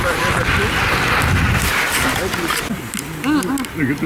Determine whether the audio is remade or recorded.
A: recorded